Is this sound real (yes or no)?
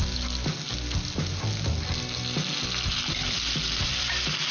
yes